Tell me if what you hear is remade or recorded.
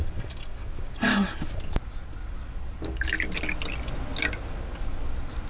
recorded